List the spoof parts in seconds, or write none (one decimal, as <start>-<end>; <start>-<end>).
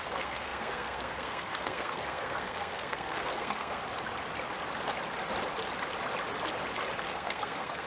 0.0-3.8; 7.1-7.9